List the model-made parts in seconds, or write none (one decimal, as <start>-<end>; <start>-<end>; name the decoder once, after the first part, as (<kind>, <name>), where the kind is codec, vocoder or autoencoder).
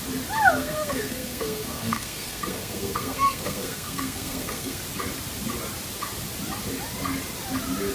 0.6-4.8 (codec, SNAC)